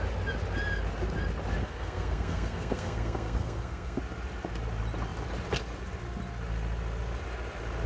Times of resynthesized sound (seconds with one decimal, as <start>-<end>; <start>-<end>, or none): 1.6-4.0